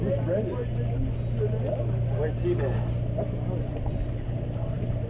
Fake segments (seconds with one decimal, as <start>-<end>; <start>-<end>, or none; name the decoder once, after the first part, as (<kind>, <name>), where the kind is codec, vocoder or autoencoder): 0.0-0.6 (vocoder, BigVGAN v2); 3.6-5.1